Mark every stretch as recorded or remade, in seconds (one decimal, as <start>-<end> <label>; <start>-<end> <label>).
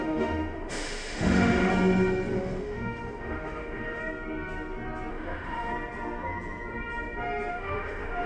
0.0-1.7 remade; 1.7-2.4 recorded; 2.4-4.0 remade; 4.0-5.1 recorded; 5.1-5.7 remade; 5.7-7.5 recorded; 7.5-8.3 remade